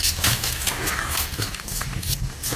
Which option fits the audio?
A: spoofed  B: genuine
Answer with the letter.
A